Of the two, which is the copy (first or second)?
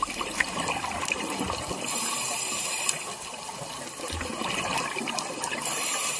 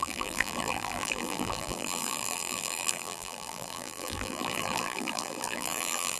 second